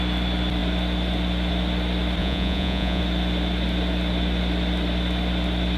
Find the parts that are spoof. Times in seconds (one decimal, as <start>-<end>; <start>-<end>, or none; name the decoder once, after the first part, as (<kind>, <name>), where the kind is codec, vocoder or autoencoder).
2.2-3.0 (vocoder, Vocos)